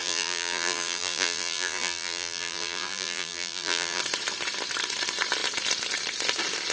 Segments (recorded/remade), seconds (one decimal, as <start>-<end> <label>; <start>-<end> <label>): 0.0-4.0 remade; 4.0-6.7 recorded

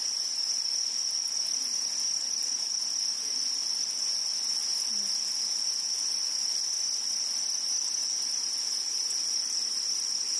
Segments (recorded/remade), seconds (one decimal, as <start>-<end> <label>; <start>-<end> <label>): 0.0-10.4 recorded

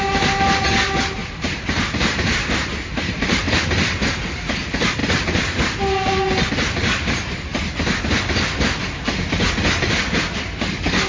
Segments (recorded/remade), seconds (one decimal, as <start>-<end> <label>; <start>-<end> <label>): 0.0-1.2 recorded; 1.2-3.5 remade; 3.5-11.1 recorded

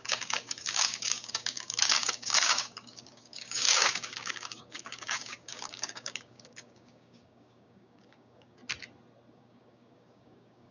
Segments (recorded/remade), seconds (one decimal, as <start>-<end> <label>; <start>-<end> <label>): 0.0-8.6 remade; 8.6-9.3 recorded; 9.3-10.7 remade

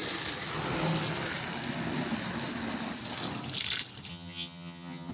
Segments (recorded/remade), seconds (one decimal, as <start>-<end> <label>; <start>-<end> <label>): 0.0-4.1 recorded; 4.1-5.1 remade

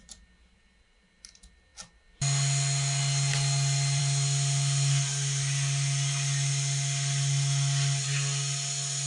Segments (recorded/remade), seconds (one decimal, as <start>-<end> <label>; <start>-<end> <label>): 0.0-9.1 recorded